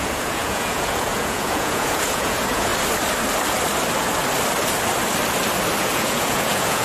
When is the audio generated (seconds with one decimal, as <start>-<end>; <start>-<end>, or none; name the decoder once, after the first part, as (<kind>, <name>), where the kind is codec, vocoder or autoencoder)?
0.0-2.7 (vocoder, Vocos); 5.8-6.8